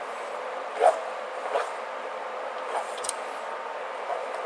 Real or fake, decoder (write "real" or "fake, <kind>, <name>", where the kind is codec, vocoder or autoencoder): fake, vocoder, BigVGAN v2